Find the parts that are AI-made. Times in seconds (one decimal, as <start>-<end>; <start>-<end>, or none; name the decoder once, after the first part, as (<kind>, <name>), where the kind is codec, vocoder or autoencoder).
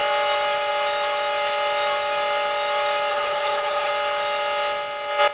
3.1-3.9 (codec, HILCodec)